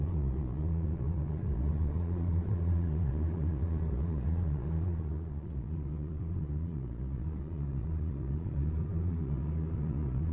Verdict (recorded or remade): remade